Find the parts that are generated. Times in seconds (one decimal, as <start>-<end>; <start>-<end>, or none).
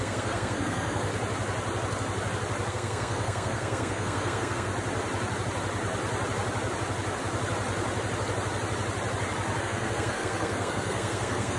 0.0-1.1; 2.7-4.7; 9.6-11.6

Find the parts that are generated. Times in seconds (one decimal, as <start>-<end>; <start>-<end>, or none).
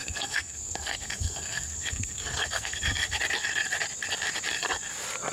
0.0-3.2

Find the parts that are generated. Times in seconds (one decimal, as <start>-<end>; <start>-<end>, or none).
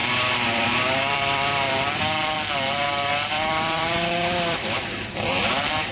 0.0-1.7; 3.1-5.3